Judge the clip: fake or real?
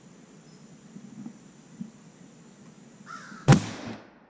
real